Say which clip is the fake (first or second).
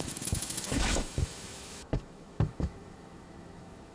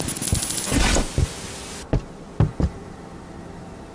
first